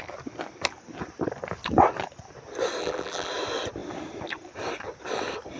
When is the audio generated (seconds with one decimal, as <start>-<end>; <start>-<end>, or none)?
2.8-3.3